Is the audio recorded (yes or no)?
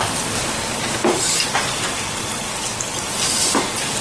yes